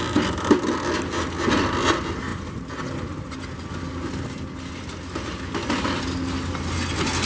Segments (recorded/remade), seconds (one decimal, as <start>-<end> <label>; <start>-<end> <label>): 0.0-7.3 recorded